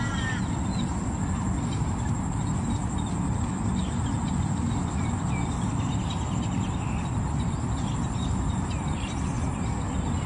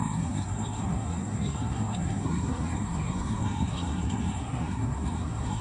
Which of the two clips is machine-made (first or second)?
second